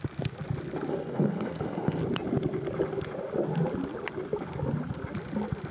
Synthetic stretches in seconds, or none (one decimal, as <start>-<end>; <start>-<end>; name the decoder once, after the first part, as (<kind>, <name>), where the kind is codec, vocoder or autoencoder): 0.9-2.0 (codec, SNAC)